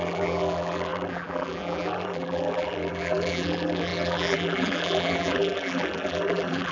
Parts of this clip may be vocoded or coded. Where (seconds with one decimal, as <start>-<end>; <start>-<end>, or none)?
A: 0.0-6.7